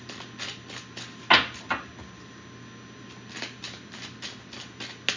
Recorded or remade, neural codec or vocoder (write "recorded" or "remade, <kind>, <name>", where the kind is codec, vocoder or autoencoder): recorded